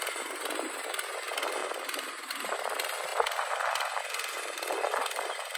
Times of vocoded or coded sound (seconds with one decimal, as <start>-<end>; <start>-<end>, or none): none